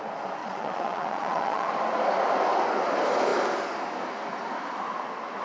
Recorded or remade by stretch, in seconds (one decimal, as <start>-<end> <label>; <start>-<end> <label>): 0.0-0.4 recorded; 0.4-1.7 remade; 1.7-5.4 recorded